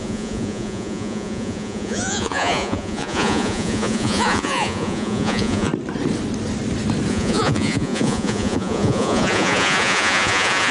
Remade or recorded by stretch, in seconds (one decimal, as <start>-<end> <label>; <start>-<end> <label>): 0.0-5.7 remade; 5.7-7.1 recorded; 7.1-10.7 remade

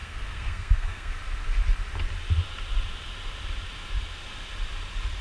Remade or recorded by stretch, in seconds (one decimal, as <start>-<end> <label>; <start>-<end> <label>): 0.0-1.1 remade; 1.1-5.2 recorded

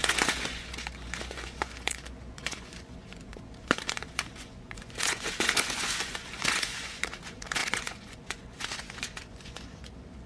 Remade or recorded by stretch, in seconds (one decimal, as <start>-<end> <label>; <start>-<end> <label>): 0.0-10.3 remade

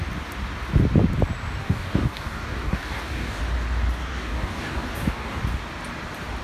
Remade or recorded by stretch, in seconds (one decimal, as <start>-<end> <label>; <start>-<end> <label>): 0.0-1.6 recorded; 1.6-3.4 remade; 3.4-4.0 recorded; 4.0-5.4 remade; 5.4-6.4 recorded

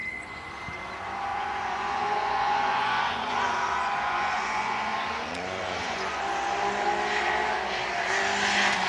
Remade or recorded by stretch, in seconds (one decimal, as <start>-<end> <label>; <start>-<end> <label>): 0.0-0.5 remade; 0.5-1.3 recorded; 1.3-6.2 remade; 6.2-8.9 recorded